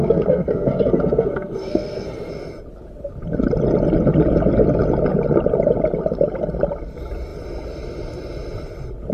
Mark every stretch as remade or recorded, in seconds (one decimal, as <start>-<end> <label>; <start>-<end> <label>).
0.0-2.3 remade; 2.3-9.1 recorded